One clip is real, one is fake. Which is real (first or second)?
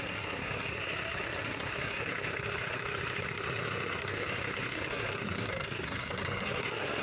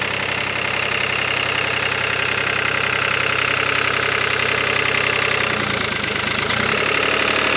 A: second